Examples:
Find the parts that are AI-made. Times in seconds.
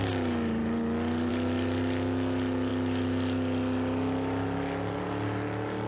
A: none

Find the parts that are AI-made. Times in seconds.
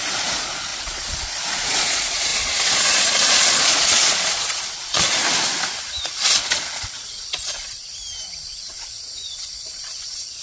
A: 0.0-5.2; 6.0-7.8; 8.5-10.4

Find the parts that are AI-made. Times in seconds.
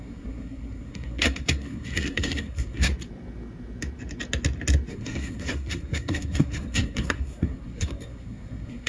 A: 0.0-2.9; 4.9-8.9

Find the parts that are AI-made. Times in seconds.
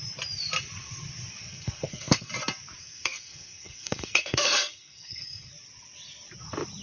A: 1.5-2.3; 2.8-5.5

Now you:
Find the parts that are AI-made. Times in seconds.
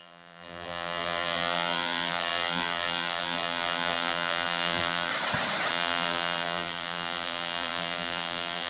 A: 0.0-5.1; 5.7-8.7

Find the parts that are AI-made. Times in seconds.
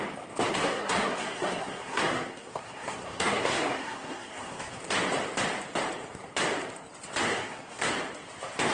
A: 0.5-4.8; 7.3-7.9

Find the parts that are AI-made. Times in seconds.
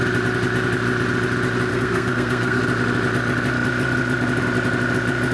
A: 1.7-2.6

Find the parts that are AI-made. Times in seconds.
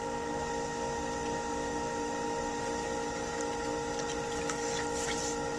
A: none